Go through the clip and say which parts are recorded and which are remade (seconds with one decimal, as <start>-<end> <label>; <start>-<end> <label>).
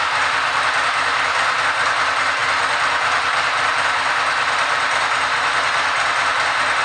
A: 0.0-6.8 recorded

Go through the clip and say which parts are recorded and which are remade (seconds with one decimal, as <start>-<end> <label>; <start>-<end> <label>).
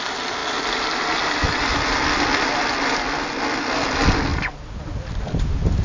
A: 0.0-0.4 remade; 0.4-3.9 recorded; 3.9-4.3 remade; 4.3-5.0 recorded; 5.0-5.8 remade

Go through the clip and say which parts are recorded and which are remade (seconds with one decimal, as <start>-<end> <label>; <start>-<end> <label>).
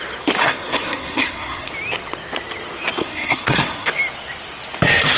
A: 0.0-0.4 recorded; 0.4-1.7 remade; 1.7-3.0 recorded; 3.0-3.9 remade; 3.9-5.2 recorded